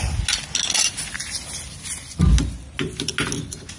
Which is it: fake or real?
real